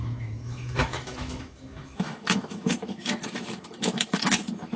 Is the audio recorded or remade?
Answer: remade